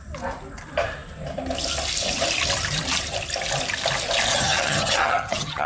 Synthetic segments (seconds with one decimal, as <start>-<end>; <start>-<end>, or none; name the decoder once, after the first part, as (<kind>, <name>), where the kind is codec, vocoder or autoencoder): 4.3-5.7 (vocoder, HiFi-GAN)